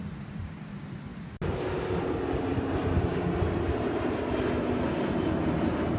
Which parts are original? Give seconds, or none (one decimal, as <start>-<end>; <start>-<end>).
0.0-6.0